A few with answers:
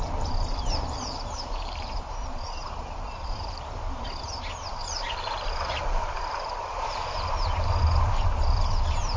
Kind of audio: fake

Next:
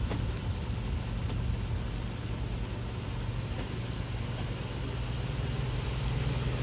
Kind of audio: real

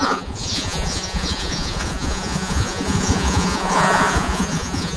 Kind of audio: fake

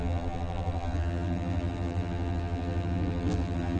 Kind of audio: fake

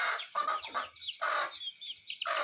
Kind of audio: real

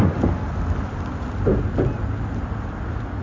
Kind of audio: real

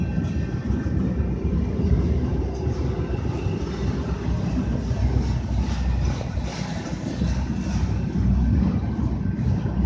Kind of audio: real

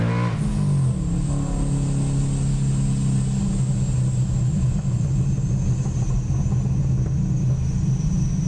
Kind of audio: real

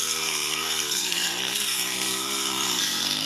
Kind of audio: fake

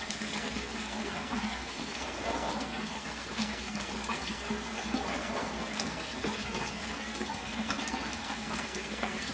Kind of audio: fake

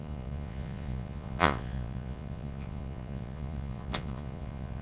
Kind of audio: fake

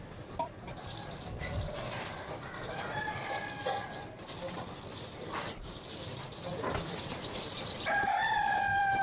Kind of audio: fake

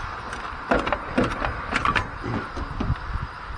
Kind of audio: real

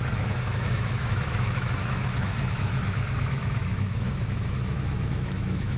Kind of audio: fake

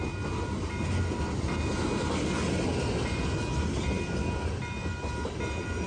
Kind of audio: real